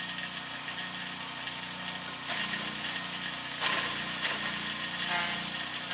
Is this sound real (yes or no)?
yes